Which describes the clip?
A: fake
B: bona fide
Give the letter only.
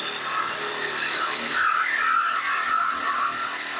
B